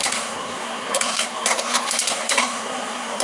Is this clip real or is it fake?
fake